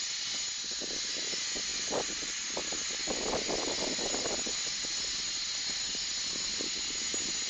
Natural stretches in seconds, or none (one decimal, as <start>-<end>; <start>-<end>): 0.0-7.5